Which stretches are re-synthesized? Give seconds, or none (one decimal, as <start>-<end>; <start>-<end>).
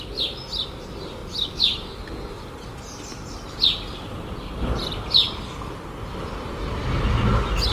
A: none